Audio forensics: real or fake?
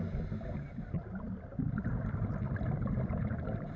real